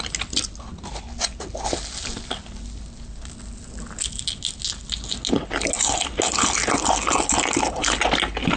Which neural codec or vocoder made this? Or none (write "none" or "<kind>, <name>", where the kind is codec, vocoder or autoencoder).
none